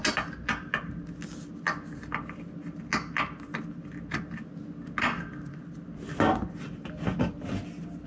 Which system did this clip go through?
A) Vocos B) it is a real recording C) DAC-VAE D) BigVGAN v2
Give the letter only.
B